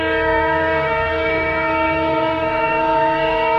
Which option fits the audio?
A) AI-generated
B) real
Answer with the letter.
A